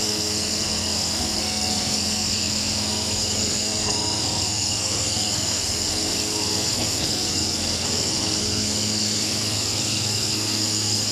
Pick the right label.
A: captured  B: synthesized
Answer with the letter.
B